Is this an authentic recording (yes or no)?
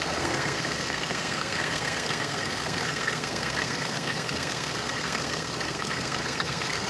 no